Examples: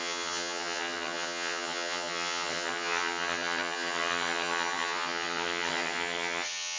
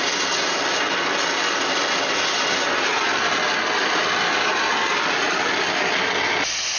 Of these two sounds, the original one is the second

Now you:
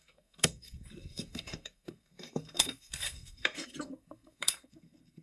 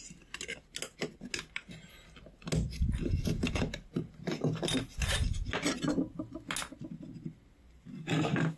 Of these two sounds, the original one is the second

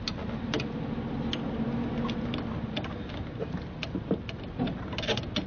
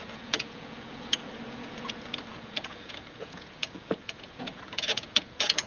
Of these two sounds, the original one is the first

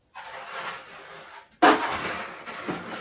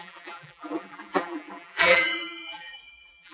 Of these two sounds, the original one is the first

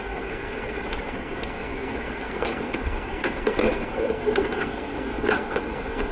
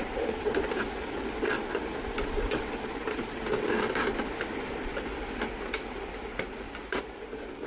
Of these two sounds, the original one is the second